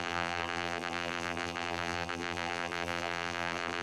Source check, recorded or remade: remade